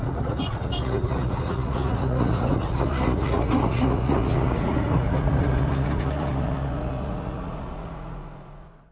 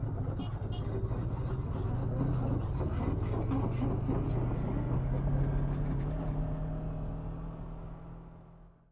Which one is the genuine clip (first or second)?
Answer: second